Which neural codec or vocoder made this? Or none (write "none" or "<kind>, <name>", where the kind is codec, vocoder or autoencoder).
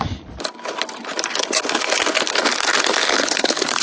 none